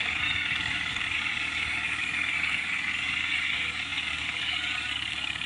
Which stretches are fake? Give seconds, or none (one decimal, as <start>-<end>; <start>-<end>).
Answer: 0.0-5.5